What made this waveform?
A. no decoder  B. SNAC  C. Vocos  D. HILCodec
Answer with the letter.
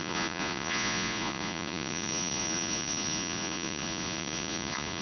C